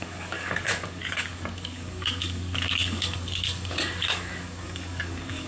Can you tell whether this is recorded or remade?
remade